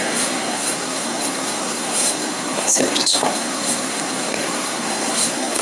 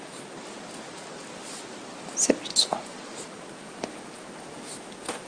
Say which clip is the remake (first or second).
first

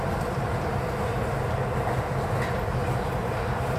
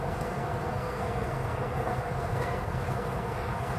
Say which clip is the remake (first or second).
second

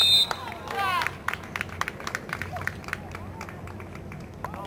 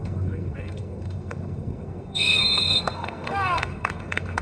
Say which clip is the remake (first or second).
second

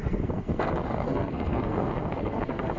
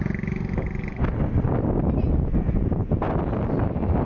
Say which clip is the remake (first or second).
first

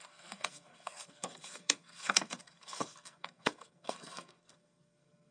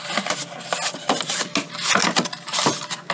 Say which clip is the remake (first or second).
first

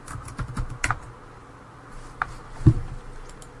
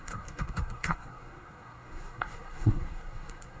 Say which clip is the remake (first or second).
second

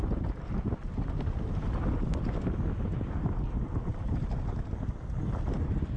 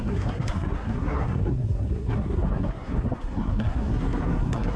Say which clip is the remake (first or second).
second